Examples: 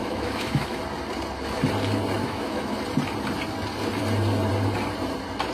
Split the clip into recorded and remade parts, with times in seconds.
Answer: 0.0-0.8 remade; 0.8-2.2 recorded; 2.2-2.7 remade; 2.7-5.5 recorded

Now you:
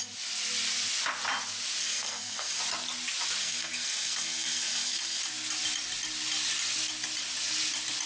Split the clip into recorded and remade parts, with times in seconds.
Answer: 0.0-1.8 recorded; 1.8-2.6 remade; 2.6-3.4 recorded; 3.4-5.2 remade; 5.2-8.1 recorded

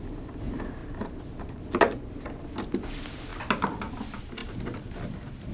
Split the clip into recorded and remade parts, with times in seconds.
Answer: 0.0-0.8 recorded; 0.8-1.6 remade; 1.6-5.5 recorded